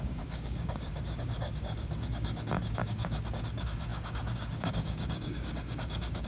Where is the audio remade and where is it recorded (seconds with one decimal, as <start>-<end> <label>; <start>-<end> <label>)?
0.0-6.3 remade